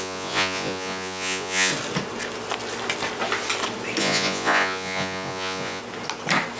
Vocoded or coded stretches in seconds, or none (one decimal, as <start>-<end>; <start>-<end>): 0.0-1.7; 4.0-5.8